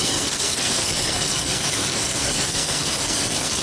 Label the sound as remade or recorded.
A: remade